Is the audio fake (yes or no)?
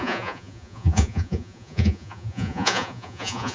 yes